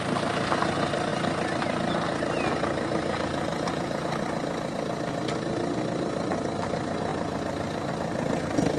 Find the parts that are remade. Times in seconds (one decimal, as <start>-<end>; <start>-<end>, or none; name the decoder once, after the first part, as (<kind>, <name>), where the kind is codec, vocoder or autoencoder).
3.5-4.2 (vocoder, Vocos)